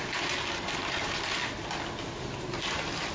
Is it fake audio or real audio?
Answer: real